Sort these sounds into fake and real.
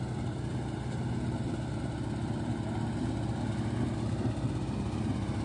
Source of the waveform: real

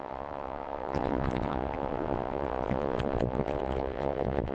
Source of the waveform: fake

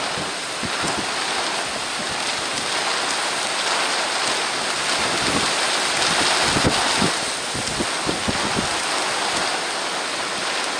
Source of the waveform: real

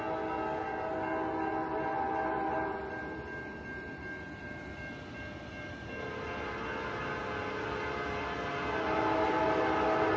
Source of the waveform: real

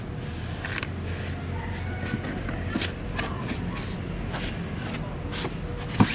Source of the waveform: real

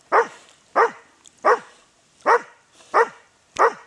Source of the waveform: real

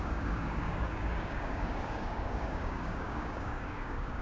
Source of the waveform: fake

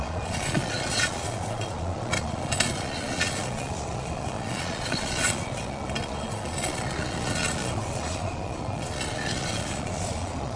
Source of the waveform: fake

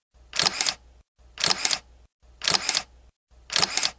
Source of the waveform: real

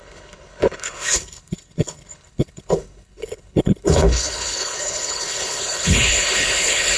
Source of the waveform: fake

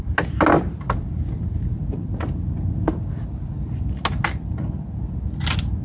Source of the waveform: real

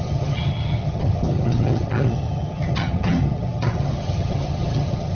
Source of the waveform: fake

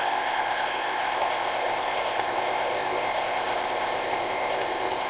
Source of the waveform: fake